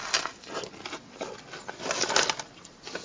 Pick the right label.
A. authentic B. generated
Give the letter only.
A